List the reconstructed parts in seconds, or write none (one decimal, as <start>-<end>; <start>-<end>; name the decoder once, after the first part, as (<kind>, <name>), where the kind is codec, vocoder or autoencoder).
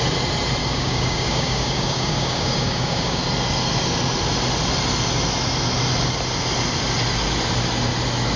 0.6-3.2 (codec, DAC)